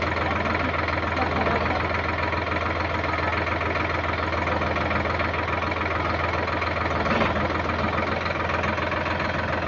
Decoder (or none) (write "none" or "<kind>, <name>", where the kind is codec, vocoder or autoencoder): none